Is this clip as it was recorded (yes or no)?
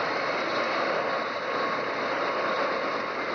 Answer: yes